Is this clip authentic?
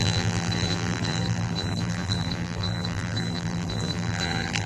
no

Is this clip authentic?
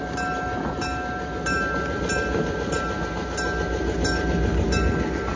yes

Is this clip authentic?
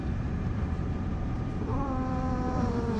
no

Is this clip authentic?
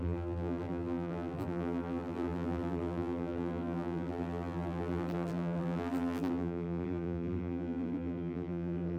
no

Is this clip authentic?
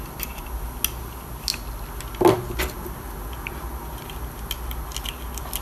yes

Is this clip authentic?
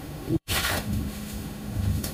no